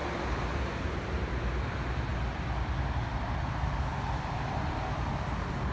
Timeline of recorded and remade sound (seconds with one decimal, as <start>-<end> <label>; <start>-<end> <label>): 0.0-5.7 recorded